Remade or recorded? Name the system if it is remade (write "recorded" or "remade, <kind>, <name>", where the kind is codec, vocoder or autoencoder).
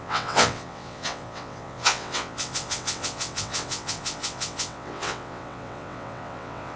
remade, vocoder, WaveNeXt